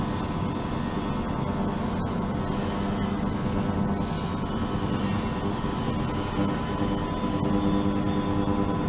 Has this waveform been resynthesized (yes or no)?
no